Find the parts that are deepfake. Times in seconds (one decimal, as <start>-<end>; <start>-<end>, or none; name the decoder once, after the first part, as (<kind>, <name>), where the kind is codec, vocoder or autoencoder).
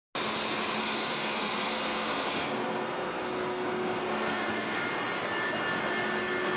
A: 0.8-4.8 (codec, SNAC)